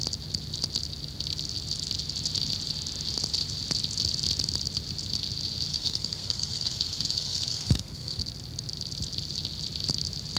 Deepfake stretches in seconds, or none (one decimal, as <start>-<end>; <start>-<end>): 5.7-8.2